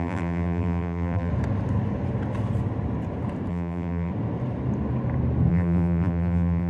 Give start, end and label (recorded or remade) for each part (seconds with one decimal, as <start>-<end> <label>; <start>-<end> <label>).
0.0-1.3 remade; 1.3-3.5 recorded; 3.5-4.1 remade; 4.1-5.5 recorded; 5.5-6.7 remade

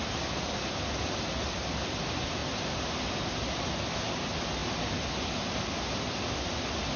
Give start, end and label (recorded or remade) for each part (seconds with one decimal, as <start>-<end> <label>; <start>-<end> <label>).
0.0-7.0 recorded

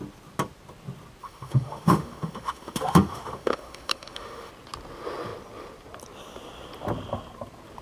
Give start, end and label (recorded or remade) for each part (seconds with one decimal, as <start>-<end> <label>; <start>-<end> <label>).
0.0-1.2 recorded; 1.2-4.5 remade; 4.5-7.8 recorded

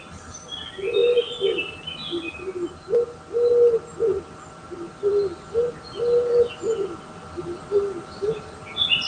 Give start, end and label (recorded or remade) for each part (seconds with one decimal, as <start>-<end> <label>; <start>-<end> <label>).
0.0-9.1 recorded

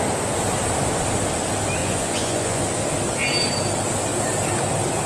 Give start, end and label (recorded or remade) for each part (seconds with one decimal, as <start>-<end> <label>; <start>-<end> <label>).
0.0-1.8 recorded; 1.8-2.6 remade; 2.6-5.1 recorded

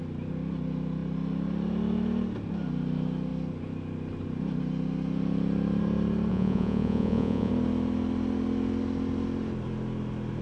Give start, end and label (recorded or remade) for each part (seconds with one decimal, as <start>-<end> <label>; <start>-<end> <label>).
0.0-6.3 recorded; 6.3-7.5 remade; 7.5-10.4 recorded

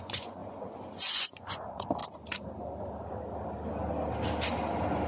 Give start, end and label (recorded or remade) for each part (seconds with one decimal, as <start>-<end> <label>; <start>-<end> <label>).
0.0-2.0 remade; 2.0-5.1 recorded